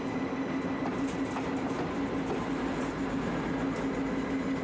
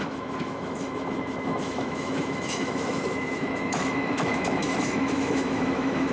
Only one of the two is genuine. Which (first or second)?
first